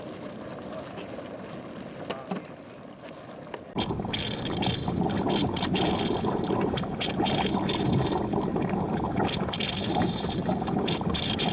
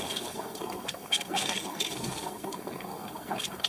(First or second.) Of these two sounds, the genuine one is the first